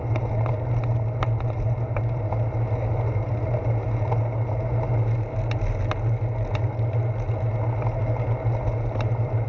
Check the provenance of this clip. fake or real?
real